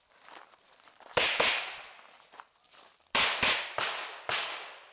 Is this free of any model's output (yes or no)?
yes